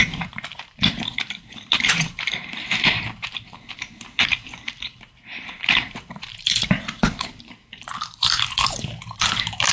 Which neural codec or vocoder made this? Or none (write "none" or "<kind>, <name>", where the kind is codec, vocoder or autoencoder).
vocoder, BigVGAN v2